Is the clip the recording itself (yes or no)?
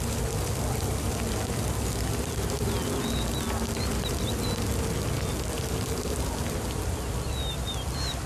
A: yes